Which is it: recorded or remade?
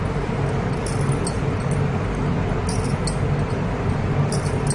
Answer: recorded